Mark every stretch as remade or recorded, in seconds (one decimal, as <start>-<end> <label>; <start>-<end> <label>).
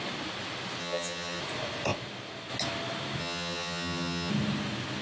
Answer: 0.0-0.8 recorded; 0.8-1.4 remade; 1.4-3.2 recorded; 3.2-4.3 remade; 4.3-5.0 recorded